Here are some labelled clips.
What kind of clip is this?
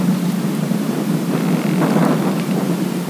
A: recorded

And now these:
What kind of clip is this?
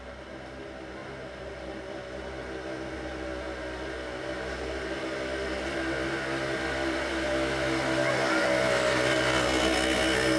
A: recorded